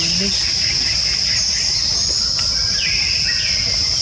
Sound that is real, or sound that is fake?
real